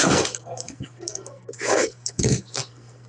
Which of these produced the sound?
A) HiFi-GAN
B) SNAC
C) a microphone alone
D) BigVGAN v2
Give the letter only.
B